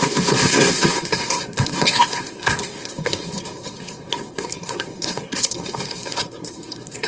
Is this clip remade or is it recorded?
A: remade